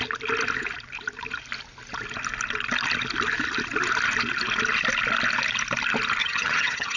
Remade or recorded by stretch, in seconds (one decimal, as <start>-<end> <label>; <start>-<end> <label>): 0.0-6.2 recorded; 6.2-7.0 remade